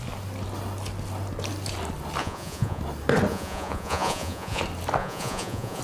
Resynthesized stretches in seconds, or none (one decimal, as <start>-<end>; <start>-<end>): 2.2-2.8; 3.3-4.6; 5.0-5.8